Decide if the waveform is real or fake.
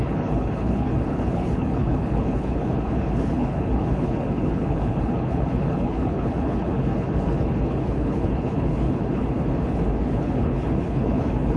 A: fake